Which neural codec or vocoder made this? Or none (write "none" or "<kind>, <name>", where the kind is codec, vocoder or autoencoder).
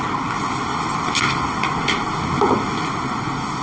none